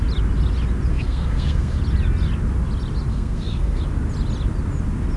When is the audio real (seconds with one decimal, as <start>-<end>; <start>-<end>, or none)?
0.0-0.9; 1.8-3.1; 3.8-5.2